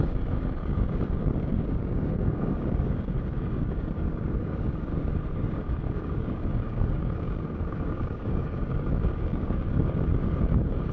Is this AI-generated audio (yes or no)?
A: yes